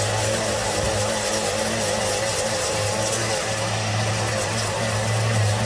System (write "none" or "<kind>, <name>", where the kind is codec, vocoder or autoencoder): none